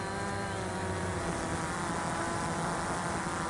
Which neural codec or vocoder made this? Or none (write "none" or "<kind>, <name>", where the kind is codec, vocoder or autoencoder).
none